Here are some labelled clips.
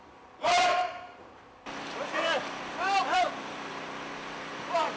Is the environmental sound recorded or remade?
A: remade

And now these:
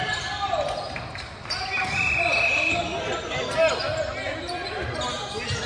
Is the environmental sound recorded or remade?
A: recorded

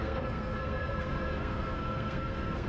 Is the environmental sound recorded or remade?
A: remade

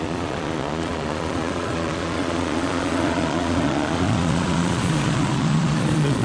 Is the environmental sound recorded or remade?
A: remade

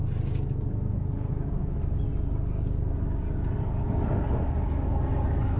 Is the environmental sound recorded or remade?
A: recorded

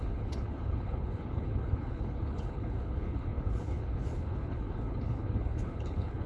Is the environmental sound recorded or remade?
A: remade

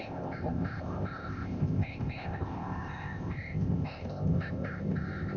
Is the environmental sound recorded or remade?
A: remade